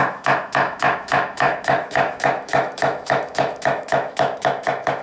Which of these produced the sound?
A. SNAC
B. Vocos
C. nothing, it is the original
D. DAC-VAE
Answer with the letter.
D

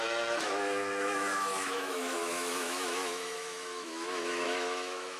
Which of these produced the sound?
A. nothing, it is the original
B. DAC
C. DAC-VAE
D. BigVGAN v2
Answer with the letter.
C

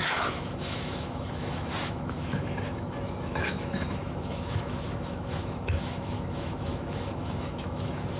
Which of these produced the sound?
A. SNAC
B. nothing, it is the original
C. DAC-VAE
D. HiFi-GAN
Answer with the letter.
C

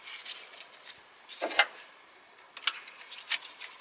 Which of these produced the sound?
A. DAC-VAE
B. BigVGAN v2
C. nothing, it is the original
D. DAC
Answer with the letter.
C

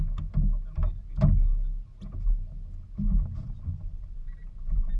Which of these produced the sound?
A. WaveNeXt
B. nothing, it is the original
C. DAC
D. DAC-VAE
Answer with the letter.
B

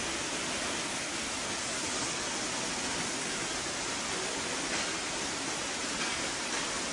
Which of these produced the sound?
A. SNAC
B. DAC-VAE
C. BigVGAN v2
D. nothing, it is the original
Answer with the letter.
D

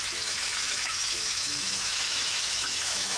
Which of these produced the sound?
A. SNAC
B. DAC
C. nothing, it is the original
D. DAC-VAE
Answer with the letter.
D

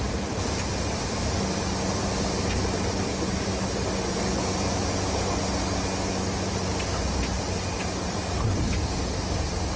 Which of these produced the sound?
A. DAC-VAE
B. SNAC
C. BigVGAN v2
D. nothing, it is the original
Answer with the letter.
D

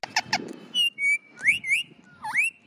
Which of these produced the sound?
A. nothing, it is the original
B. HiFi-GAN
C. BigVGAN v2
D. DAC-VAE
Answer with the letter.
A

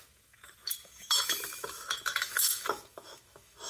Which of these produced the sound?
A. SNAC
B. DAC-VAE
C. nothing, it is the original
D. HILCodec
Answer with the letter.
B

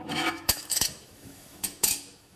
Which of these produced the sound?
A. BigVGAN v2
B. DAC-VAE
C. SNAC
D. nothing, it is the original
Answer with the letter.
B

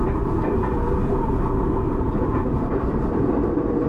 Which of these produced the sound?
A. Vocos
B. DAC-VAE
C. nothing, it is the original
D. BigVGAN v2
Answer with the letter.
C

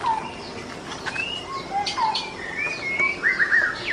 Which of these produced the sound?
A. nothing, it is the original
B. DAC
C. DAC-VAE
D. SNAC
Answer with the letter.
A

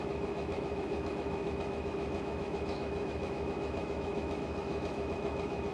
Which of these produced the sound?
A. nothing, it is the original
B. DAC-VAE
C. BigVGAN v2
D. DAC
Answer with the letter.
B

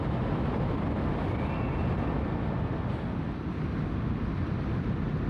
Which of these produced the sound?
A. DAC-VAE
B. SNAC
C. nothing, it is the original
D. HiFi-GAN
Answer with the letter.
C